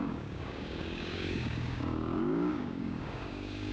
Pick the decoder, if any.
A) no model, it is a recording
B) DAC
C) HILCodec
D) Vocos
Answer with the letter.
B